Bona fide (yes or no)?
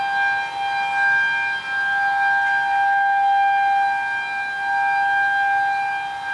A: yes